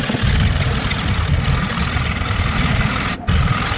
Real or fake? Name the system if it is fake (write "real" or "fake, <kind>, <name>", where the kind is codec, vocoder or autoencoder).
real